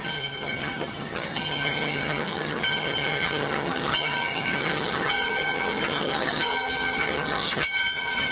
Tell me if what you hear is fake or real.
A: fake